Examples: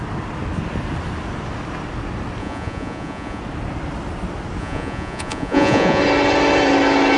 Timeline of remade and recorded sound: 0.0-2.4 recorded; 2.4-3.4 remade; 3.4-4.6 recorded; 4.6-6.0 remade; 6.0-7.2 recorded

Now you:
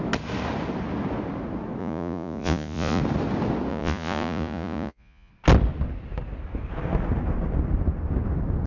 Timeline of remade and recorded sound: 0.0-1.8 recorded; 1.8-3.0 remade; 3.0-3.7 recorded; 3.7-5.3 remade; 5.3-8.7 recorded

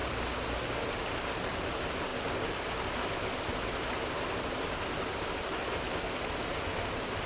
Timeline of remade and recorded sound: 0.0-7.3 recorded

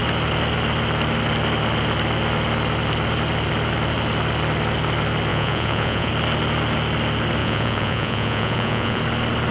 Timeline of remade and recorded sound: 0.0-5.3 recorded; 5.3-6.1 remade; 6.1-7.4 recorded; 7.4-9.0 remade; 9.0-9.5 recorded

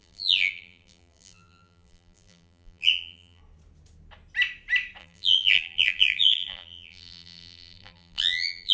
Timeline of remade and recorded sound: 0.0-3.4 remade; 3.4-5.0 recorded; 5.0-8.7 remade

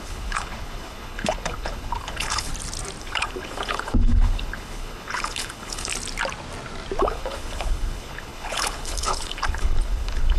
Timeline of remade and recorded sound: 0.0-2.5 remade; 2.5-3.0 recorded; 3.0-5.9 remade; 5.9-7.0 recorded; 7.0-10.4 remade